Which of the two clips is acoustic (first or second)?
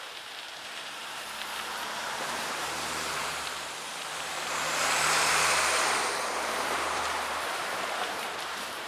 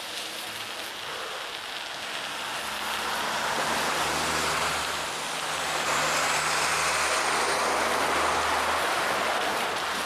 second